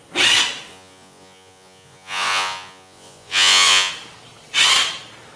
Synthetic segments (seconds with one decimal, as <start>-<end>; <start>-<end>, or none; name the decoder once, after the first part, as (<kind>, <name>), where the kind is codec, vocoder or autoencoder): 0.7-3.9 (vocoder, Vocos)